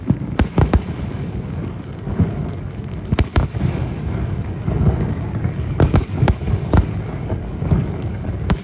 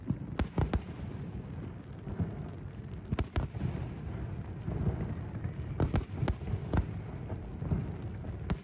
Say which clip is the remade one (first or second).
first